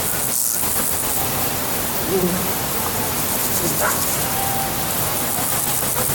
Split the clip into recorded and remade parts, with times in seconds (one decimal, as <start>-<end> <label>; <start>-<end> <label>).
0.0-6.1 recorded